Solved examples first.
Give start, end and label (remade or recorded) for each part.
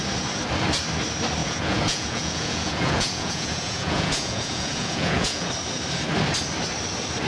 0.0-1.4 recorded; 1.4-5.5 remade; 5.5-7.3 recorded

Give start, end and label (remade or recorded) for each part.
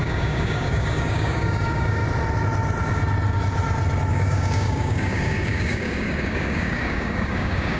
0.0-2.0 remade; 2.0-4.1 recorded; 4.1-7.8 remade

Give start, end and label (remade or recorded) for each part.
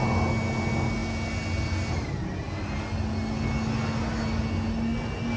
0.0-5.4 recorded